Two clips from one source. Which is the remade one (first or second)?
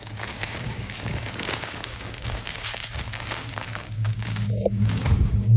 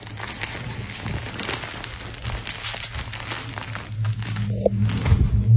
first